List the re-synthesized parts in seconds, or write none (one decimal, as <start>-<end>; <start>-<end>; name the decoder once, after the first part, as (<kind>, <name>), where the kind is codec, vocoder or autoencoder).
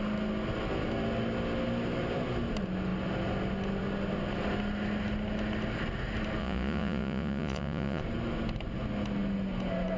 6.4-8.0 (vocoder, Vocos)